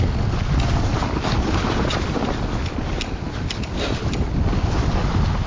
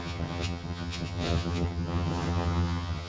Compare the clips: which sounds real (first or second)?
first